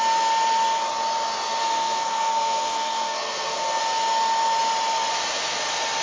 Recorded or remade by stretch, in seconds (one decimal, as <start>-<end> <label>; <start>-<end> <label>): 0.0-1.6 recorded; 1.6-3.8 remade; 3.8-6.0 recorded